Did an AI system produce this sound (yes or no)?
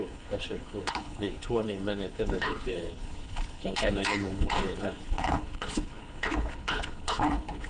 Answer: yes